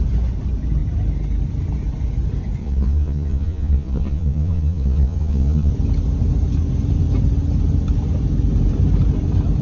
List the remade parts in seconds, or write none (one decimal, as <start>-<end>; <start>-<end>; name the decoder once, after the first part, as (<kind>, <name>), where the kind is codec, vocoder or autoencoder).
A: 2.6-5.7 (vocoder, Vocos)